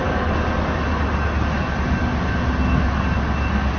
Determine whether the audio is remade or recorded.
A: recorded